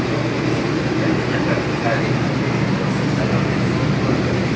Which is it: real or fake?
real